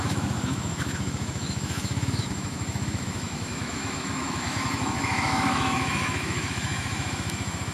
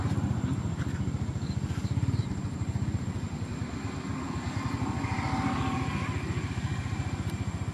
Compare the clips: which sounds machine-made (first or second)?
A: first